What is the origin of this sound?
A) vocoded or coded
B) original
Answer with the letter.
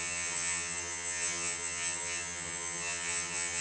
A